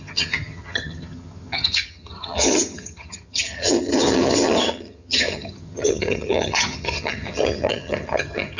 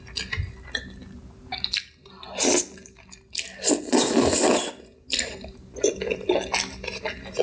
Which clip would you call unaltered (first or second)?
second